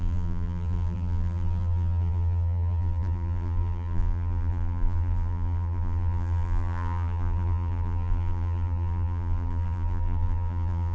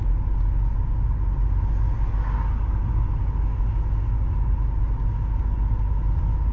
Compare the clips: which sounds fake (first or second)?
first